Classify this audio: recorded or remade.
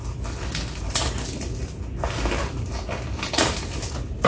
recorded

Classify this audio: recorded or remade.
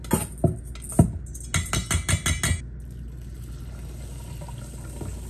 recorded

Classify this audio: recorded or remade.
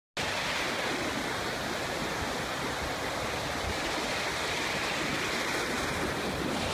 recorded